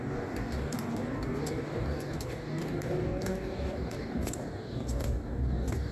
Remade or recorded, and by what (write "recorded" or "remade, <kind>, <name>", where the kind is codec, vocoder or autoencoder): remade, codec, DAC